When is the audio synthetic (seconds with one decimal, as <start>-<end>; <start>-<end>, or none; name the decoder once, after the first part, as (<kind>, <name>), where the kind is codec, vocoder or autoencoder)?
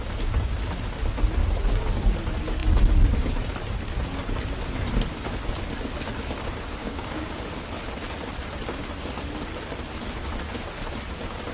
6.8-7.3 (codec, DAC)